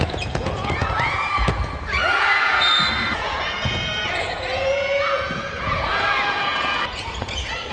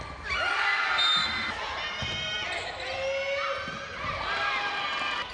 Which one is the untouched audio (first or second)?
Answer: second